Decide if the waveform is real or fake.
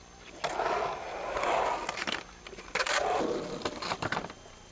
real